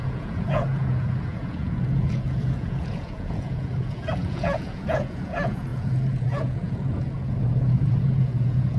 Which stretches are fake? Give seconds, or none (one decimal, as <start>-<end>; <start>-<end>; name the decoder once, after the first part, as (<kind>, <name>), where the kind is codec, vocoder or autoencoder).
0.0-8.8 (vocoder, Vocos)